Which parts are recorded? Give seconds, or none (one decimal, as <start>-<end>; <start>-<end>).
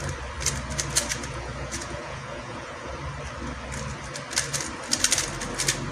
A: 0.0-1.1; 2.9-5.9